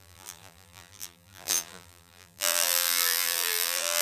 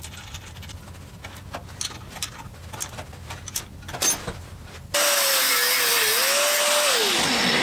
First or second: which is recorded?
second